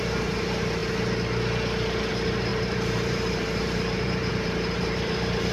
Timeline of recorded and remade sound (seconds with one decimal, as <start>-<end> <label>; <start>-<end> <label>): 0.0-0.8 remade; 0.8-2.1 recorded; 2.1-5.5 remade